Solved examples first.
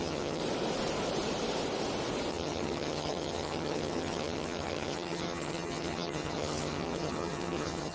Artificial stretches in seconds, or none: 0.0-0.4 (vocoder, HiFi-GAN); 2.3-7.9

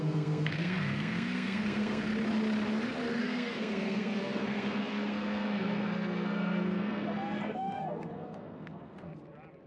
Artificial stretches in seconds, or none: 0.0-2.1 (codec, SNAC); 3.2-9.1

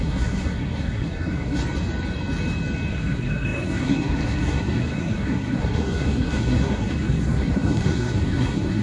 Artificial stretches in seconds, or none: 0.0-1.6 (codec, SNAC); 2.9-8.8

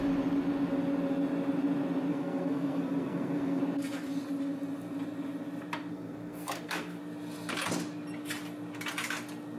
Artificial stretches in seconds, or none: 2.1-3.6 (codec, SNAC); 5.9-7.0

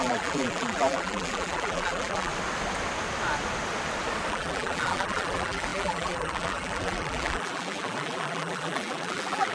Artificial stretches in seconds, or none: 0.0-2.3 (vocoder, BigVGAN v2); 4.3-9.5

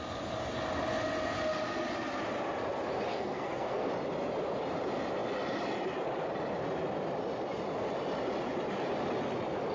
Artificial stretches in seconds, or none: 3.1-3.9 (codec, SNAC)

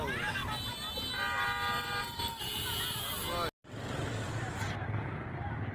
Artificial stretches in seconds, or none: none

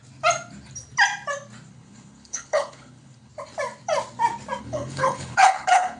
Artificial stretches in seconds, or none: 1.7-3.3 (codec, HILCodec); 4.6-6.0